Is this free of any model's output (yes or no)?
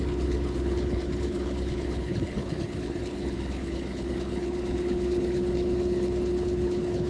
no